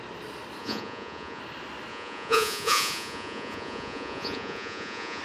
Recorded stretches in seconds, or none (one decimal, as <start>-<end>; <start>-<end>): 0.0-0.6; 1.4-1.9